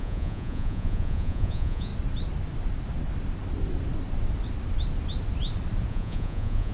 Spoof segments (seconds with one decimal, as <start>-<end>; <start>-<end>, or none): 0.0-1.9; 5.9-6.7